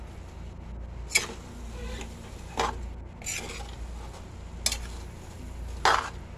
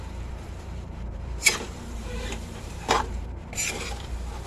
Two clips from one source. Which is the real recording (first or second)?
first